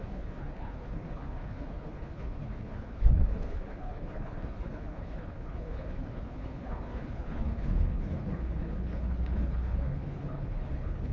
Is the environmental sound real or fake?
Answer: fake